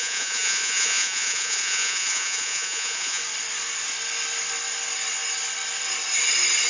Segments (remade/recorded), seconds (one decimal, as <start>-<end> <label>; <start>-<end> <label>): 0.0-3.2 remade; 3.2-6.7 recorded